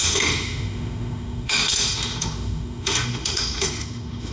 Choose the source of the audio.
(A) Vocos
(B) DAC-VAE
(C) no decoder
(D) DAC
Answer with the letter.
B